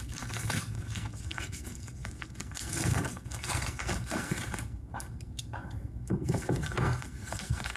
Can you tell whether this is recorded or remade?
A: remade